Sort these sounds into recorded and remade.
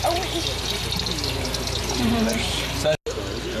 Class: recorded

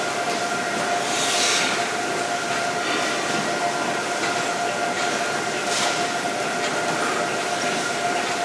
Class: recorded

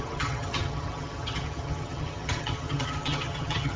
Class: remade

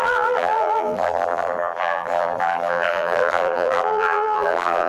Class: remade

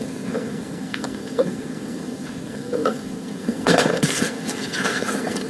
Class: remade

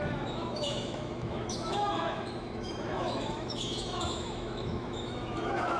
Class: remade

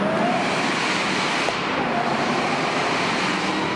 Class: recorded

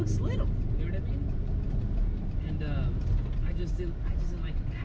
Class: recorded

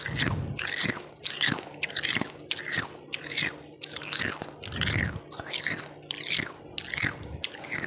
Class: recorded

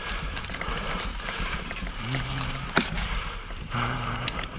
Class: remade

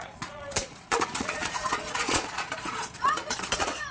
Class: remade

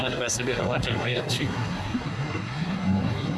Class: remade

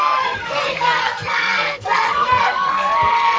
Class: remade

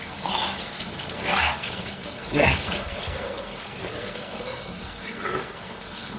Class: remade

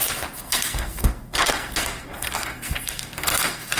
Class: remade